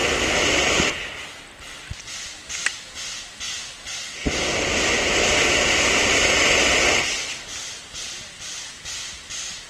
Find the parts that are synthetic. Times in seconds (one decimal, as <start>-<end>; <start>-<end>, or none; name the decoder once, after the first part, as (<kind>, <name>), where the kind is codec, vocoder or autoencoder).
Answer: 7.5-9.2 (vocoder, BigVGAN v2)